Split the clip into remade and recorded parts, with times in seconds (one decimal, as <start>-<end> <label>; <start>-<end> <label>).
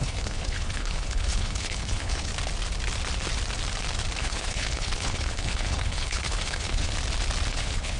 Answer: 0.0-2.3 remade; 2.3-4.2 recorded; 4.2-6.9 remade; 6.9-7.5 recorded; 7.5-8.0 remade